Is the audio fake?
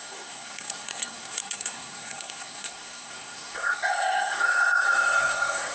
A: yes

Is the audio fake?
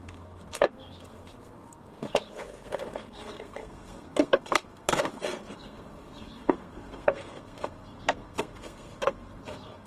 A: yes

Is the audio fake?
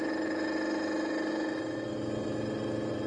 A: no